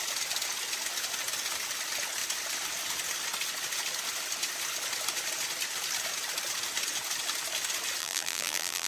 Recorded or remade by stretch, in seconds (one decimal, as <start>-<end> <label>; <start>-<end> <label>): 0.0-8.0 recorded; 8.0-8.9 remade